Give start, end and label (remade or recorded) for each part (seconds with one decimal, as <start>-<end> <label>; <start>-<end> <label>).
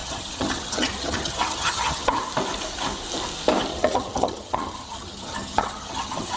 0.0-2.2 remade; 2.2-3.7 recorded; 3.7-6.4 remade